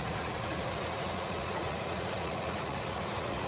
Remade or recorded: remade